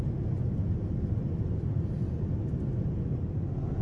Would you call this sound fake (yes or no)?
no